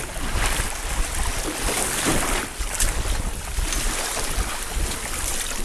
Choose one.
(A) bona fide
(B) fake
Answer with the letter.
A